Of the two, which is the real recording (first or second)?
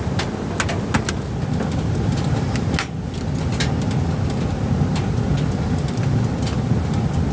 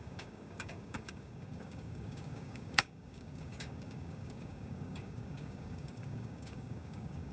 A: first